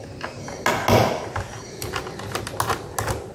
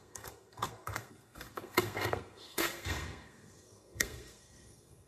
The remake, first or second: second